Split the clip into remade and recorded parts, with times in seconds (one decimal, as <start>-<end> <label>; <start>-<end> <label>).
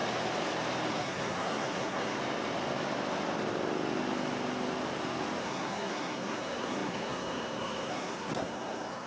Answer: 0.0-0.9 recorded; 0.9-2.2 remade; 2.2-5.4 recorded; 5.4-9.1 remade